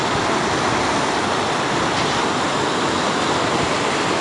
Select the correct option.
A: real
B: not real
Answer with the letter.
A